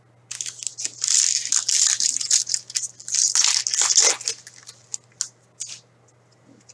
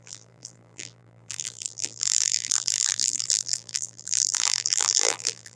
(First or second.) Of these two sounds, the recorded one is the first